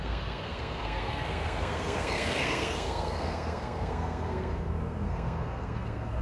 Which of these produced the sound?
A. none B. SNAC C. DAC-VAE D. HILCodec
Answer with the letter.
B